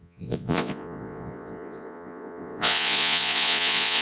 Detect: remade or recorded remade